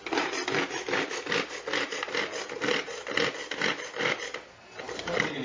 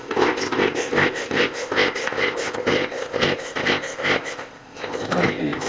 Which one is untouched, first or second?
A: first